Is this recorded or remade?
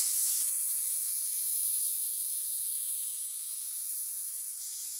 remade